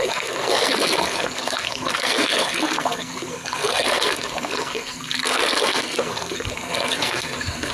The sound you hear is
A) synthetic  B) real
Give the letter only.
A